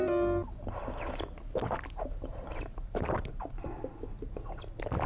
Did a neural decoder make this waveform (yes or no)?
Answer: no